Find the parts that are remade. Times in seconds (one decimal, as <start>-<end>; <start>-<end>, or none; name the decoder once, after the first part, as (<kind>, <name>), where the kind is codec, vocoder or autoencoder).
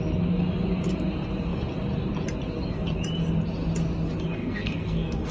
4.4-5.3 (codec, SNAC)